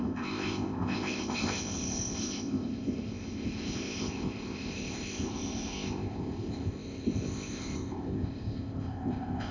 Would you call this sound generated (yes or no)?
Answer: yes